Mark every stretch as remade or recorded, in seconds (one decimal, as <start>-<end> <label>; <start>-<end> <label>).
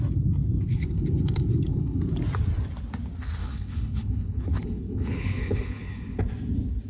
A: 0.0-0.7 recorded; 0.7-2.0 remade; 2.0-3.4 recorded; 3.4-6.2 remade; 6.2-6.9 recorded